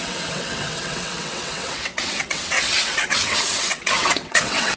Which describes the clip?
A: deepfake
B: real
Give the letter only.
A